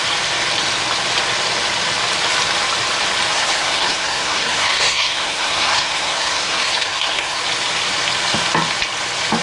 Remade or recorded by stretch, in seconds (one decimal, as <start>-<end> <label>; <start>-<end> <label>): 0.0-3.3 recorded; 3.3-7.4 remade; 7.4-9.4 recorded